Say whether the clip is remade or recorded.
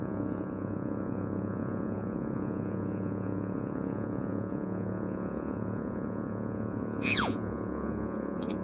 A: remade